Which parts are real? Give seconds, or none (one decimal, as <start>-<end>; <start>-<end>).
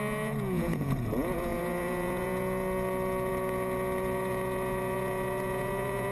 none